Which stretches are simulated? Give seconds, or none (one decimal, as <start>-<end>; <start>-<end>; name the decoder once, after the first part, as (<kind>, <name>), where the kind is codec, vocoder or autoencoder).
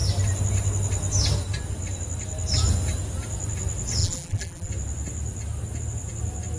4.0-4.7 (vocoder, BigVGAN v2)